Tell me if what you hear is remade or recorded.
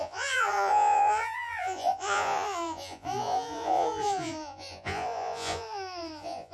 remade